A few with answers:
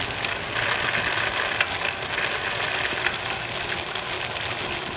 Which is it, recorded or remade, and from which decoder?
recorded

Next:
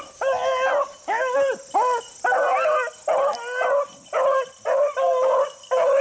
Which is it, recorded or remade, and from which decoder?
recorded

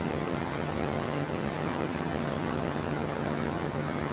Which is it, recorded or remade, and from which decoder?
remade, vocoder, HiFi-GAN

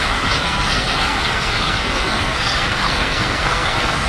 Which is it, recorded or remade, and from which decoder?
remade, codec, SNAC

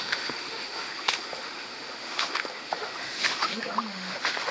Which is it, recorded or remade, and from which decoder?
remade, autoencoder, DAC-VAE